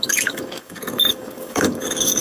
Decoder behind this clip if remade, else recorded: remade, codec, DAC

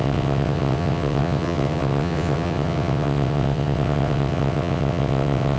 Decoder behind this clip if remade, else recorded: remade, vocoder, WaveNeXt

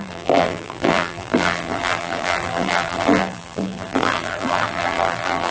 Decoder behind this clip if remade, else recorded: remade, vocoder, BigVGAN v2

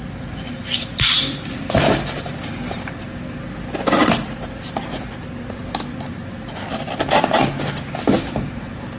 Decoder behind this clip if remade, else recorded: recorded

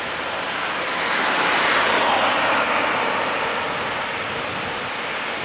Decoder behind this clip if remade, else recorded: recorded